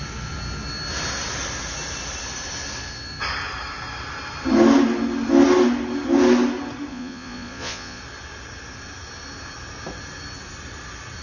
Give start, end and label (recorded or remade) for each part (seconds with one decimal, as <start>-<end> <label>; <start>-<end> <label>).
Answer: 0.0-6.9 recorded; 6.9-8.0 remade; 8.0-11.2 recorded